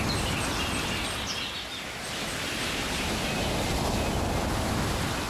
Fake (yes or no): no